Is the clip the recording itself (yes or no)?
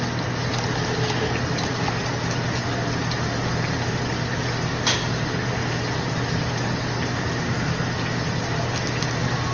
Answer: yes